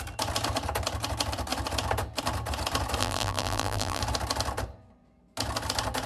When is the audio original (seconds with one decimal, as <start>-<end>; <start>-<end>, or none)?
0.0-3.0; 4.0-6.1